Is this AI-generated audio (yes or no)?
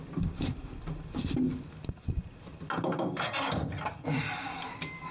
no